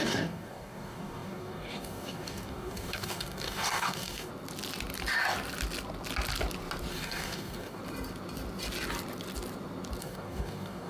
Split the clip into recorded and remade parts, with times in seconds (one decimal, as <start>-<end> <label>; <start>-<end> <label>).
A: 0.0-4.3 remade; 4.3-6.9 recorded; 6.9-7.8 remade; 7.8-10.0 recorded; 10.0-10.9 remade